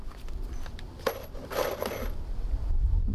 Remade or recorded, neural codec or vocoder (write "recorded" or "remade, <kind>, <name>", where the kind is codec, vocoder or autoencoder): recorded